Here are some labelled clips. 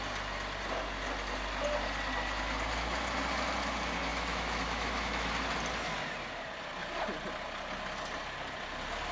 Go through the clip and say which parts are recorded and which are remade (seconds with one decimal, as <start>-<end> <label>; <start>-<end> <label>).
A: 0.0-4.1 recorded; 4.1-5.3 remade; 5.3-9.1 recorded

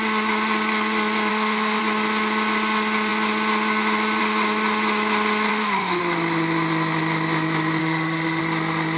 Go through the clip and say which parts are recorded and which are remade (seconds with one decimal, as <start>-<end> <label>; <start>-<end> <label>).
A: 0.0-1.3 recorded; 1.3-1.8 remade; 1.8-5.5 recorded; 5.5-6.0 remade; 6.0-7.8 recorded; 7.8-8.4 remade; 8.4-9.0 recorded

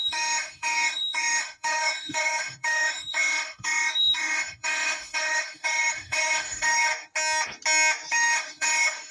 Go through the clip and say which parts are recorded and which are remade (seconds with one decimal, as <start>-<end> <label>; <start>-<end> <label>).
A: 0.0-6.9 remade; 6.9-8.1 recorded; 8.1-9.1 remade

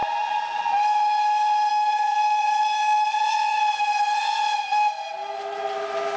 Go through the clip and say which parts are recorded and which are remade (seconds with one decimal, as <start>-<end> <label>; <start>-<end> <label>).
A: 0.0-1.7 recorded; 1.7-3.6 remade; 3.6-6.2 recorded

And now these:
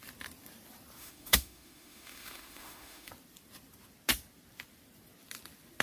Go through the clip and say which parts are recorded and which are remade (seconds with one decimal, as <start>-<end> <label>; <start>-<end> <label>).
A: 0.0-1.0 recorded; 1.0-3.1 remade; 3.1-5.8 recorded